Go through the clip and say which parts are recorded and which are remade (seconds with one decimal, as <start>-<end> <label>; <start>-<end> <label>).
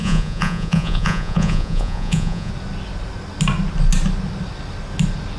0.0-2.5 remade; 2.5-5.4 recorded